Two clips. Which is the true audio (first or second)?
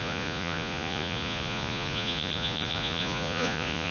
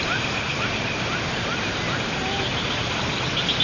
second